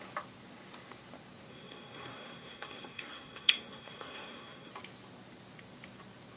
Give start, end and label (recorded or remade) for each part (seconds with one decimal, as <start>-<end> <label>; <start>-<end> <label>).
0.0-1.5 recorded; 1.5-4.7 remade; 4.7-6.4 recorded